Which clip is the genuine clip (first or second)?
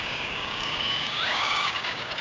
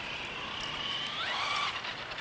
second